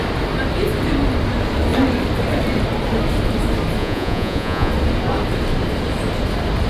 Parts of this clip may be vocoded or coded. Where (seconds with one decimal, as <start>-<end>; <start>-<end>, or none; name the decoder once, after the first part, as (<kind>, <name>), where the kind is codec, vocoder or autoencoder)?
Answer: 3.8-4.7 (vocoder, Vocos)